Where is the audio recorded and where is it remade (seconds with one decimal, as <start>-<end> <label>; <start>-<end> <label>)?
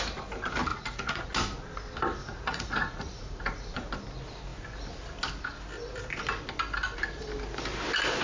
0.0-0.7 recorded; 0.7-1.3 remade; 1.3-2.2 recorded; 2.2-3.9 remade; 3.9-8.2 recorded